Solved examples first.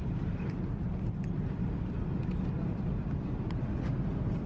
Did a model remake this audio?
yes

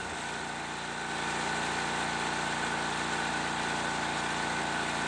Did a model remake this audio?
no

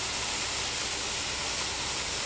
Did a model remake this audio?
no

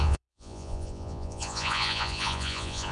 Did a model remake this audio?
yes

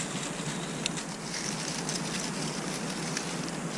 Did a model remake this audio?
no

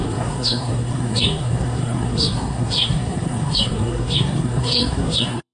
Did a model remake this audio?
yes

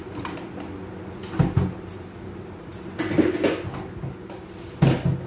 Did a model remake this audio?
no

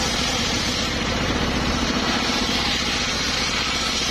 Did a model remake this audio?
yes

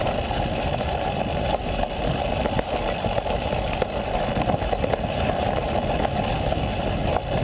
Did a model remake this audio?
no